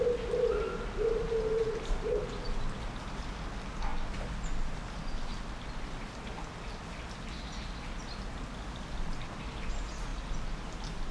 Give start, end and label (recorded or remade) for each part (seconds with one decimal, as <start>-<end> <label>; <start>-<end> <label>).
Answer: 0.0-11.1 recorded